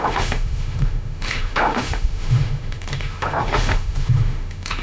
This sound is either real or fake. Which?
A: fake